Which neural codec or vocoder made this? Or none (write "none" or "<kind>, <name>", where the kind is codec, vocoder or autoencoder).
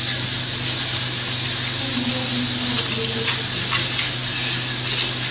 none